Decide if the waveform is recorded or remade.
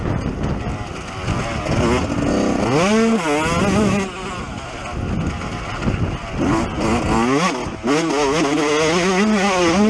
recorded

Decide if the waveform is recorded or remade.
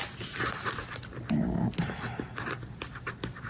recorded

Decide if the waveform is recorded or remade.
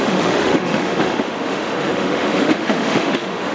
remade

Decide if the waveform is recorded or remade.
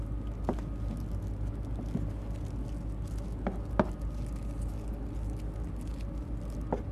recorded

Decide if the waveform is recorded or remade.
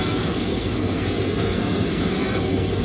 remade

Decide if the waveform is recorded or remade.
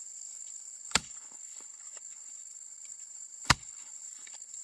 remade